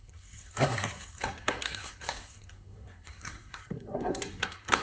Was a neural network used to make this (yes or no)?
yes